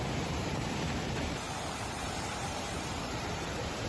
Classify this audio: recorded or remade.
remade